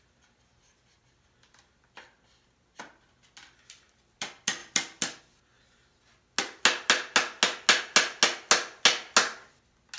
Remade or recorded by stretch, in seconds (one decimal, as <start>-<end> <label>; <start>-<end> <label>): 0.0-10.0 recorded